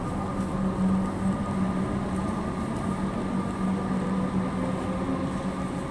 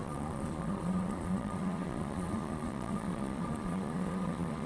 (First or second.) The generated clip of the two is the second